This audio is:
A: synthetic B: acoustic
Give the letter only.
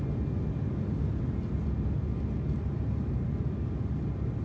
B